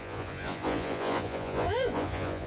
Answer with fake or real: fake